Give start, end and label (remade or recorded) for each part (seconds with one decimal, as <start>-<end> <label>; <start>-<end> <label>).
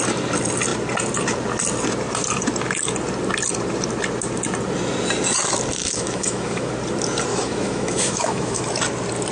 0.0-5.8 recorded; 5.8-6.7 remade; 6.7-7.3 recorded; 7.3-8.6 remade; 8.6-9.3 recorded